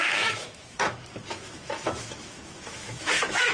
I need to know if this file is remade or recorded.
remade